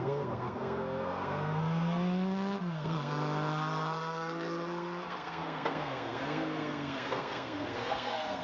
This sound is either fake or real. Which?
fake